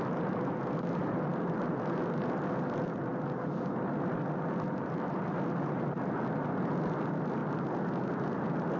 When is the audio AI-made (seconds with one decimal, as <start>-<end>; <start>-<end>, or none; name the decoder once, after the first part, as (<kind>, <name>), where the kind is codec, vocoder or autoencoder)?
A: none

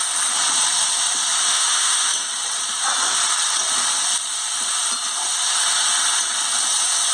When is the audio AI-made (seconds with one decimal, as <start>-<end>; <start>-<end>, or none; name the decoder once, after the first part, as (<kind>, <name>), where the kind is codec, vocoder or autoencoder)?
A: 1.4-2.3 (autoencoder, DAC-VAE)

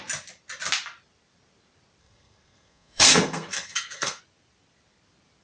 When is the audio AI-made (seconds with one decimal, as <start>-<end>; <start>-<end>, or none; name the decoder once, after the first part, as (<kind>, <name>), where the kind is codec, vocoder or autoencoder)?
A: 2.0-4.2 (codec, SNAC)

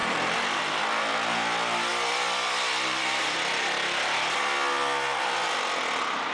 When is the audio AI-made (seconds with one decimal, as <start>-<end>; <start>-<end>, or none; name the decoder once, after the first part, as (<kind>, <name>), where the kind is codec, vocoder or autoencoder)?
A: 1.9-3.2 (vocoder, BigVGAN v2)

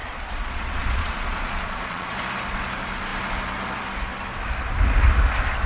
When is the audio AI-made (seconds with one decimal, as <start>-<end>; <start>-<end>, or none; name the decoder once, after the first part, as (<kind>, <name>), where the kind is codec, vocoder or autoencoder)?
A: 0.0-2.1 (vocoder, Vocos)

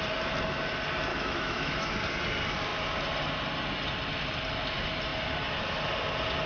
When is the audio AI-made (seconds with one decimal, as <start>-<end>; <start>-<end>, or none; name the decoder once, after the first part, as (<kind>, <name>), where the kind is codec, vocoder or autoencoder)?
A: 1.1-1.9 (autoencoder, DAC-VAE)

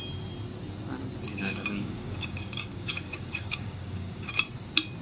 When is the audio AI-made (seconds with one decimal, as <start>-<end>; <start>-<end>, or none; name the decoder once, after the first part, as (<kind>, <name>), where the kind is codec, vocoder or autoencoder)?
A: 1.3-4.3 (codec, DAC)